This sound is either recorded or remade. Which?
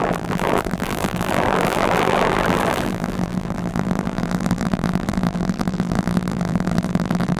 remade